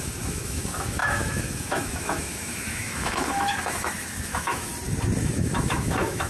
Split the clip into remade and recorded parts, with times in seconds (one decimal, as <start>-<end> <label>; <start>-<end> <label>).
0.0-4.7 remade; 4.7-5.2 recorded; 5.2-6.3 remade